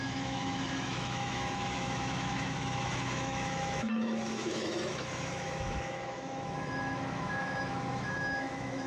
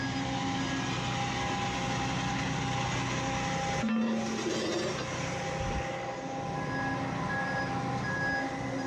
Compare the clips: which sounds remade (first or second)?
first